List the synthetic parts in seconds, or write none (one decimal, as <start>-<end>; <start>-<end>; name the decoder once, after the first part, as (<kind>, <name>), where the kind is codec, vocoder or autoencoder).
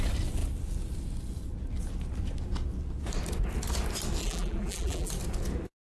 4.2-5.1 (vocoder, BigVGAN v2)